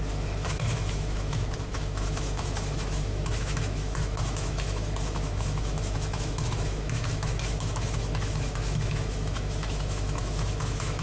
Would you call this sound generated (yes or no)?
yes